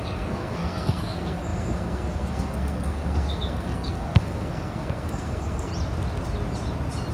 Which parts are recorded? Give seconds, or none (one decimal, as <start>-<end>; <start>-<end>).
5.7-7.1

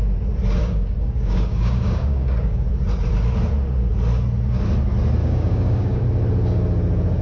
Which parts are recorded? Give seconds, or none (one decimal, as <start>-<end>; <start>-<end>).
0.0-0.6; 2.6-5.2; 6.0-7.2

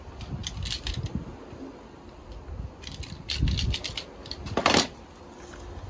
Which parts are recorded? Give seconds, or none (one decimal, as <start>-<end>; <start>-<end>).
0.0-5.9

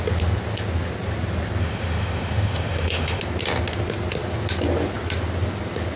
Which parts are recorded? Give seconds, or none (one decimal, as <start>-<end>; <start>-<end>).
0.0-1.6; 3.2-6.0